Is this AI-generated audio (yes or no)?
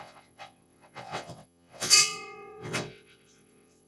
yes